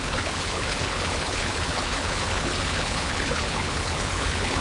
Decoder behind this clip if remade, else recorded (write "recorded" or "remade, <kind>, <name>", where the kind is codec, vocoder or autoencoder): remade, codec, HILCodec